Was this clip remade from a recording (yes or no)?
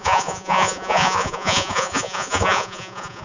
yes